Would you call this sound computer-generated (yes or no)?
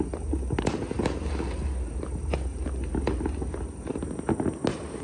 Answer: no